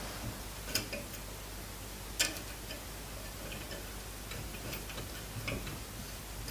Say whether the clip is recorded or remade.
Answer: recorded